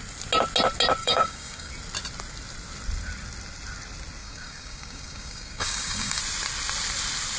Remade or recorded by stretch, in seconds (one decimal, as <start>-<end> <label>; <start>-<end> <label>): 0.0-1.0 recorded; 1.0-1.7 remade; 1.7-4.2 recorded; 4.2-6.2 remade; 6.2-7.4 recorded